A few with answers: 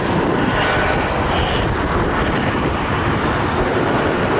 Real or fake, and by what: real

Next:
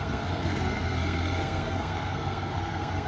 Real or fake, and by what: fake, codec, SNAC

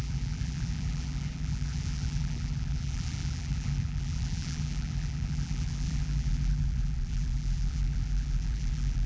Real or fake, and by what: fake, vocoder, BigVGAN v2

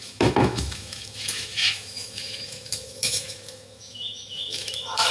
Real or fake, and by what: fake, autoencoder, DAC-VAE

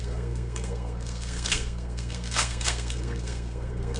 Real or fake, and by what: fake, codec, SNAC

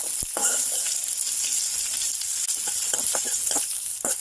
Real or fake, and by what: real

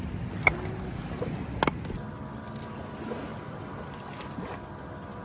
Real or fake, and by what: real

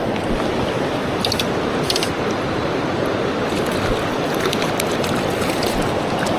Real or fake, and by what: fake, vocoder, BigVGAN v2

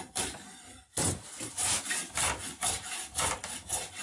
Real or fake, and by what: real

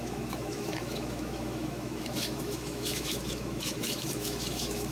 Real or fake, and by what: fake, autoencoder, DAC-VAE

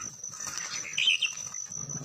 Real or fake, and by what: real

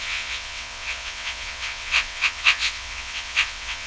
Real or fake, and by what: fake, vocoder, WaveNeXt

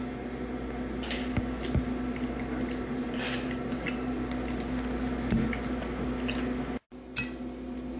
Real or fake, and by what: real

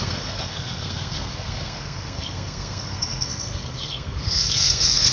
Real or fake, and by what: fake, codec, SNAC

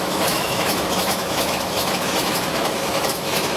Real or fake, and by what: fake, autoencoder, DAC-VAE